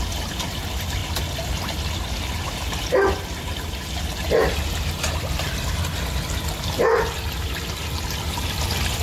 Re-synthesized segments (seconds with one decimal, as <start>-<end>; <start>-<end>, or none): none